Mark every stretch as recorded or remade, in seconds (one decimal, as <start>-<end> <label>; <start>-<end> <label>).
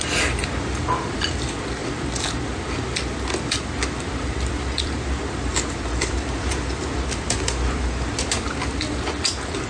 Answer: 0.0-0.6 recorded; 0.6-1.8 remade; 1.8-4.8 recorded; 4.8-9.7 remade